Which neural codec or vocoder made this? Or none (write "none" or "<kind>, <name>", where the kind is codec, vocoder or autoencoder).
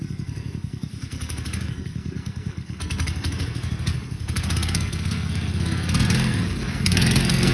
codec, SNAC